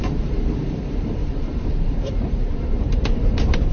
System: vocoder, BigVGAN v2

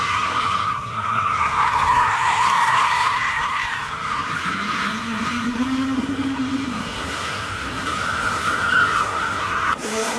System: codec, SNAC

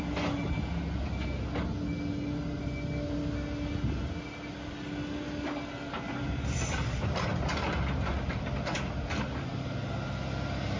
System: none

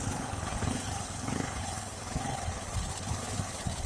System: codec, HILCodec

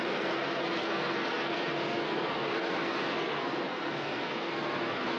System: codec, SNAC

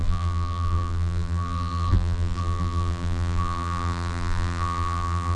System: vocoder, BigVGAN v2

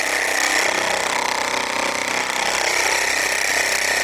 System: vocoder, BigVGAN v2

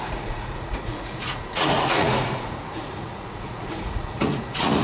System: vocoder, Vocos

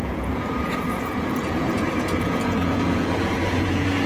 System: vocoder, Vocos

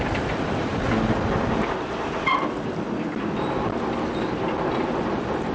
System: none